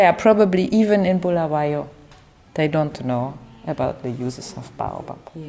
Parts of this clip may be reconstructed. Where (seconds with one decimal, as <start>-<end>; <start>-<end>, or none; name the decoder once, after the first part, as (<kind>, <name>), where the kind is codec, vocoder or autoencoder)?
none